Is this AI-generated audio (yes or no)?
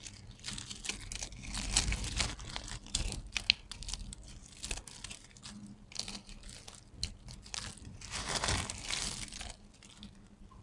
no